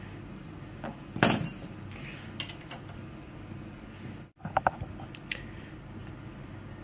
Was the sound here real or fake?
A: real